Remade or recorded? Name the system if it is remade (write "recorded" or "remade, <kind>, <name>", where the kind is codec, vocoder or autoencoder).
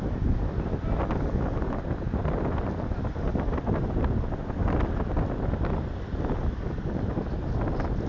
recorded